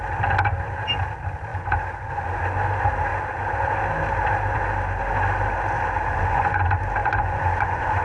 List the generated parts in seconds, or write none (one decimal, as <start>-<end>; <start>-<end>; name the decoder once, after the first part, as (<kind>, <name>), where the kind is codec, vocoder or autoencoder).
1.5-2.4 (vocoder, Vocos); 6.1-6.6; 7.0-8.0